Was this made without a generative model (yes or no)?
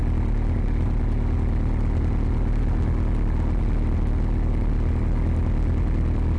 yes